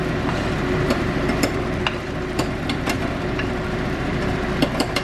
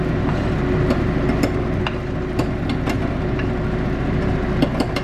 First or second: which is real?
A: second